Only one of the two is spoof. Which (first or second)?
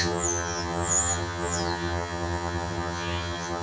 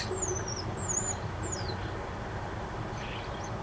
first